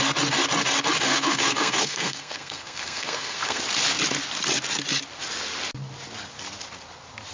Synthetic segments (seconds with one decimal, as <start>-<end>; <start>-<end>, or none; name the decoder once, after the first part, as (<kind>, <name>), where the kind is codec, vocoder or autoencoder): 1.1-3.6 (codec, SNAC)